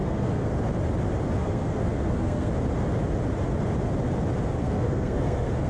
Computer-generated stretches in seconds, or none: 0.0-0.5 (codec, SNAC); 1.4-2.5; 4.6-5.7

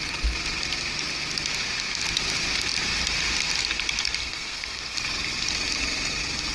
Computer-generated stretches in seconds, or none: 4.2-4.8 (codec, SNAC)

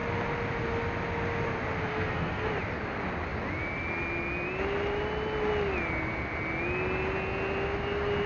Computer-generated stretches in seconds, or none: 1.9-2.5 (codec, SNAC)

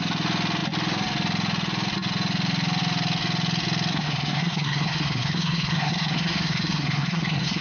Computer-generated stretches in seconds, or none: 3.9-7.6 (codec, SNAC)

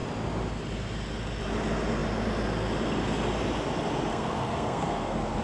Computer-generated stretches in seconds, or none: 4.1-5.4 (codec, SNAC)